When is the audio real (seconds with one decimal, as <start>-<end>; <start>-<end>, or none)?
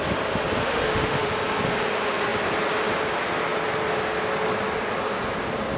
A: 0.0-0.6; 1.3-5.8